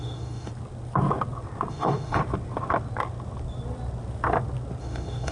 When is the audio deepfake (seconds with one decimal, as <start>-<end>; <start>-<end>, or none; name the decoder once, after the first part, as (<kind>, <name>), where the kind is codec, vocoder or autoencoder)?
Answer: 0.0-0.5 (autoencoder, DAC-VAE); 1.7-2.2; 4.8-5.3